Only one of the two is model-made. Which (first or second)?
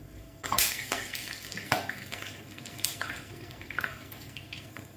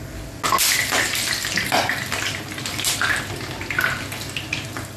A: first